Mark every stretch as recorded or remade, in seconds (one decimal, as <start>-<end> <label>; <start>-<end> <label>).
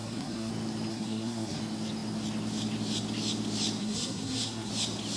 0.0-0.5 remade; 0.5-0.9 recorded; 0.9-1.6 remade; 1.6-3.8 recorded; 3.8-4.7 remade; 4.7-5.2 recorded